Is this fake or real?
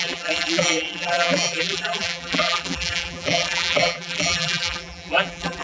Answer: fake